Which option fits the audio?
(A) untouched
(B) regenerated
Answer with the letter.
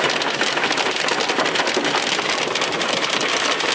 A